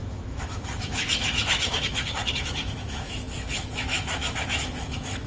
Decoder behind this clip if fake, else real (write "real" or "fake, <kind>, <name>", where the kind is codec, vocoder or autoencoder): fake, autoencoder, DAC-VAE